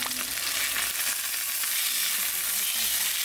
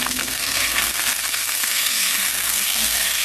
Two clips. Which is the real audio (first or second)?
first